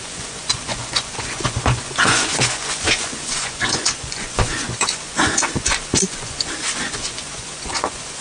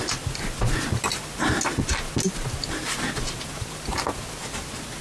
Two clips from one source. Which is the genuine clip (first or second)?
second